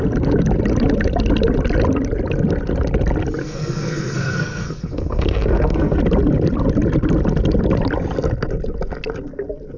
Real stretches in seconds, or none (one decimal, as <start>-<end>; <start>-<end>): 0.0-3.4; 6.0-9.8